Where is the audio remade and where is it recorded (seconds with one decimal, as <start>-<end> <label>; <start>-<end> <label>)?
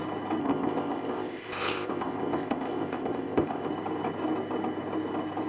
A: 0.0-0.4 recorded; 0.4-3.7 remade; 3.7-5.5 recorded